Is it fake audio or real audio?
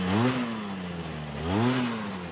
real